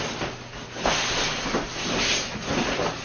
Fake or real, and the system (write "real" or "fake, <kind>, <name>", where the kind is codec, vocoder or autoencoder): real